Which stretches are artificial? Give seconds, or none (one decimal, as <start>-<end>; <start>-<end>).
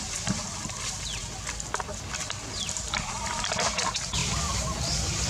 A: 0.0-1.2; 2.1-5.3